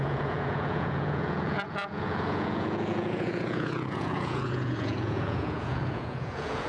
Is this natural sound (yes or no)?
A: no